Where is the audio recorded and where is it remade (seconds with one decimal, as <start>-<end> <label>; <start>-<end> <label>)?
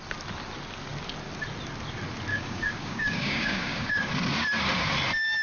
0.0-2.3 recorded; 2.3-4.1 remade; 4.1-5.4 recorded